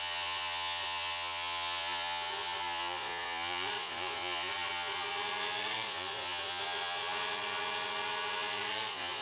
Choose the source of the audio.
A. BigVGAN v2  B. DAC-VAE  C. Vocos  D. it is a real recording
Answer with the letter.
C